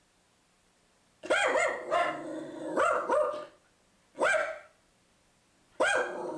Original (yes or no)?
yes